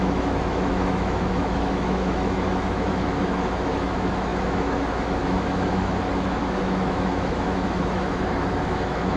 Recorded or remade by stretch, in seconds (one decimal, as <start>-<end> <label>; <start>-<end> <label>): 0.0-9.2 remade